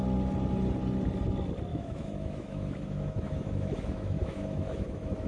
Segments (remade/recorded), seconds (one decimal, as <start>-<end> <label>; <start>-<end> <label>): 0.0-1.7 recorded; 1.7-5.3 remade